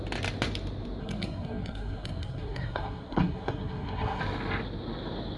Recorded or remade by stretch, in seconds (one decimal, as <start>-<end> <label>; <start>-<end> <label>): 0.0-1.0 recorded; 1.0-4.2 remade; 4.2-5.4 recorded